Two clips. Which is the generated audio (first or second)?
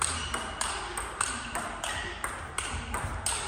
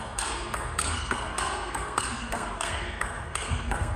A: second